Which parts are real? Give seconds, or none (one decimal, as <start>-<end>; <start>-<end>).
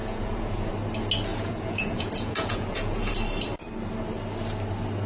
0.7-1.3; 3.1-5.1